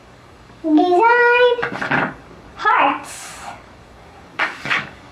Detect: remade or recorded remade